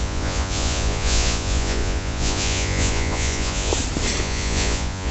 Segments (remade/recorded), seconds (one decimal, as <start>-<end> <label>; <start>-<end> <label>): 0.0-3.7 remade; 3.7-4.2 recorded; 4.2-5.1 remade